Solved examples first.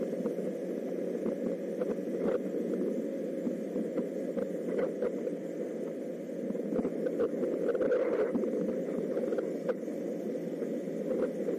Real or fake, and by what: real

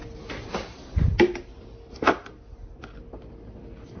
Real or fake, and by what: real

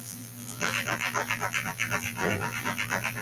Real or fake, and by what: fake, vocoder, BigVGAN v2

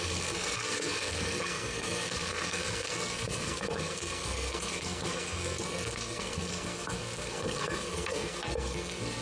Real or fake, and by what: fake, codec, SNAC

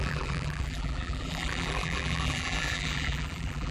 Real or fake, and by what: fake, vocoder, BigVGAN v2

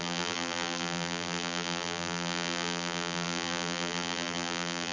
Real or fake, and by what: fake, vocoder, BigVGAN v2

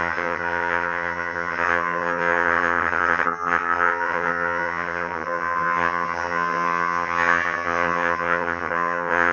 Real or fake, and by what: fake, vocoder, HiFi-GAN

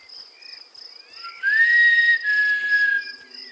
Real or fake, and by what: real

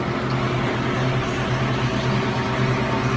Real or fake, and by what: real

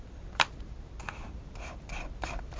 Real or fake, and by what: fake, vocoder, BigVGAN v2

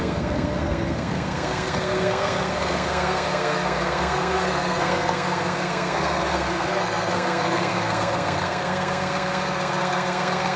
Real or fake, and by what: fake, codec, SNAC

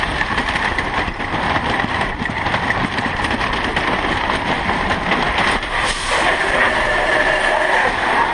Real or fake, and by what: real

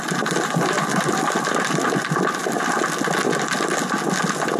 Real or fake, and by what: real